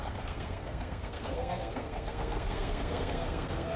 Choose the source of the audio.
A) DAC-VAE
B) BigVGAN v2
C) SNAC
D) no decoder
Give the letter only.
C